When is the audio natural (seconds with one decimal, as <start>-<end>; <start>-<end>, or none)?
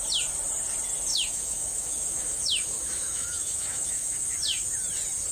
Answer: 0.0-1.1; 4.3-5.3